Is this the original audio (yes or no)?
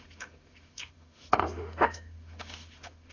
no